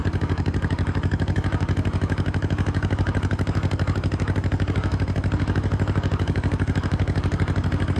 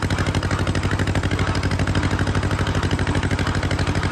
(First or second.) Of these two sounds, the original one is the second